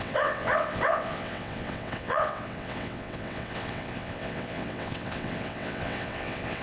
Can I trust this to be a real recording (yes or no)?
no